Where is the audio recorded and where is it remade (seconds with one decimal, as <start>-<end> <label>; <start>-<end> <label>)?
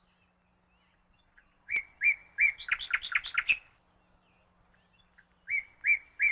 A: 0.0-0.9 recorded; 0.9-1.8 remade; 1.8-6.3 recorded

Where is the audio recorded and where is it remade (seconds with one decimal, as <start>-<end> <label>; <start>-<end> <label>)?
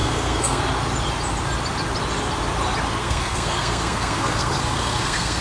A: 0.0-0.6 remade; 0.6-3.0 recorded; 3.0-5.4 remade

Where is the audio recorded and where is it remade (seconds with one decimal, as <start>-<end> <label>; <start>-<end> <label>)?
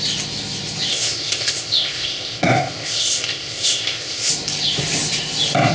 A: 0.0-0.9 recorded; 0.9-4.3 remade; 4.3-5.7 recorded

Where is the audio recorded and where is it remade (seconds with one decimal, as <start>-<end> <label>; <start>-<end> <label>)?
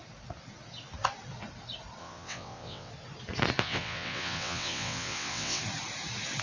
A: 0.0-2.0 recorded; 2.0-2.9 remade; 2.9-3.6 recorded; 3.6-5.6 remade; 5.6-6.4 recorded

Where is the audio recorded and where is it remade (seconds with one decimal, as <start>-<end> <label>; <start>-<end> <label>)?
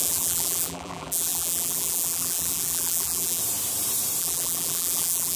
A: 0.0-3.4 remade; 3.4-4.2 recorded; 4.2-5.4 remade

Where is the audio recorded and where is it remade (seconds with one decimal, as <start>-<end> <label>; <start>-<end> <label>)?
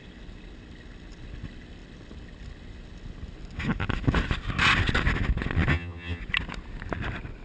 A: 0.0-5.7 recorded; 5.7-6.2 remade; 6.2-7.4 recorded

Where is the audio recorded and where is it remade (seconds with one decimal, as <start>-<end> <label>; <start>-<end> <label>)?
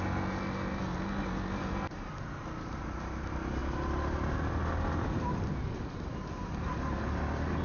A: 0.0-7.6 recorded